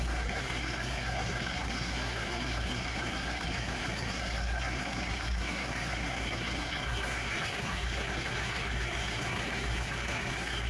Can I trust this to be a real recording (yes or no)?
no